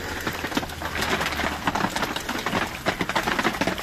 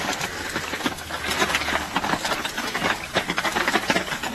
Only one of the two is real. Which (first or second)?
first